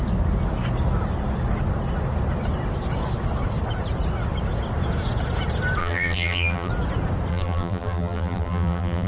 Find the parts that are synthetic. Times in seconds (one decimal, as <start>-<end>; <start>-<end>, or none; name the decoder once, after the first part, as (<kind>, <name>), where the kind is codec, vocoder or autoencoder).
5.8-6.7 (vocoder, BigVGAN v2); 7.3-9.1